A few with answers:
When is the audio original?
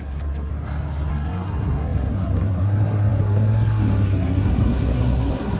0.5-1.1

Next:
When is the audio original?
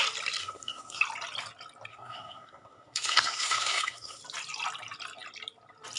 0.0-0.4; 1.0-1.9; 4.2-6.0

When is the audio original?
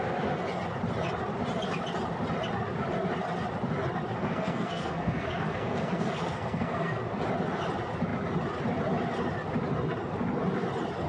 0.0-4.2; 7.0-11.1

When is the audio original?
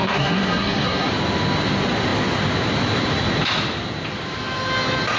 1.1-5.2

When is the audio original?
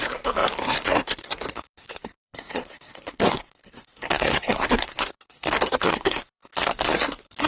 none